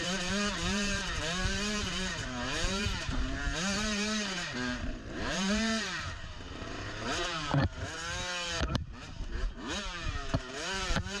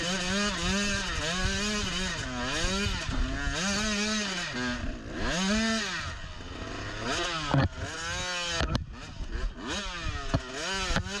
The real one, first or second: second